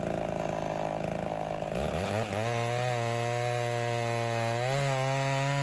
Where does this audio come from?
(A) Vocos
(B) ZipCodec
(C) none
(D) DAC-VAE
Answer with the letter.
C